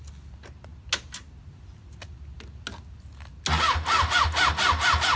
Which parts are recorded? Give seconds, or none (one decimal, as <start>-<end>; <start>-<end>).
0.0-5.2